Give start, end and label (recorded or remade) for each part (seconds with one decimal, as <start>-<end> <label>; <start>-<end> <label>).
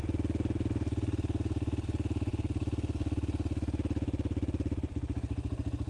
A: 0.0-5.9 recorded